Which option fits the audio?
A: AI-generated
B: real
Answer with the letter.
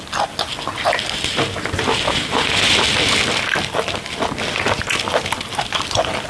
B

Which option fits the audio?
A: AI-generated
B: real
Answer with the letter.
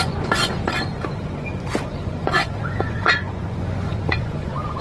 A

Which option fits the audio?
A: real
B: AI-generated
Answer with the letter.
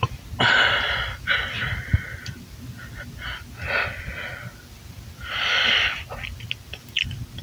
A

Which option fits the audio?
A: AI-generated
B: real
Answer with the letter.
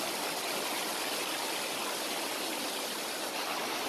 B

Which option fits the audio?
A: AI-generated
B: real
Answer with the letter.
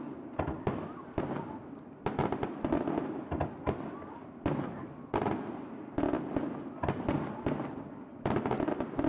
B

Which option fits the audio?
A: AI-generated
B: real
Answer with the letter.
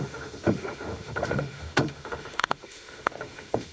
A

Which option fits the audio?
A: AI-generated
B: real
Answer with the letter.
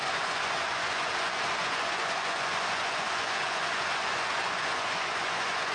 A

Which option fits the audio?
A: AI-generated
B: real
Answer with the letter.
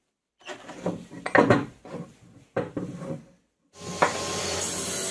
A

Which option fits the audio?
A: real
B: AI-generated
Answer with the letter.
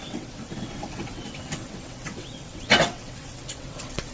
B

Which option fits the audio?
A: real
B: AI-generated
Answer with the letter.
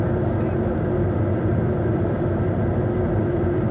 A